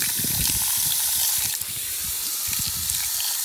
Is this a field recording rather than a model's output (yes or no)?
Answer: no